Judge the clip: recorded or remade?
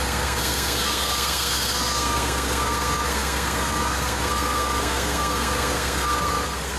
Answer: remade